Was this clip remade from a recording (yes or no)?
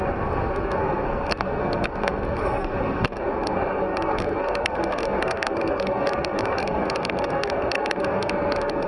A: yes